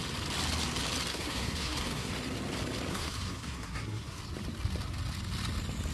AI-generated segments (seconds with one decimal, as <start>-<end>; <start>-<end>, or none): 1.1-2.1; 2.9-4.2